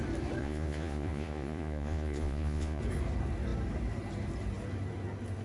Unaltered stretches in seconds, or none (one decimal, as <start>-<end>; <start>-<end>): 0.0-0.4; 2.8-5.4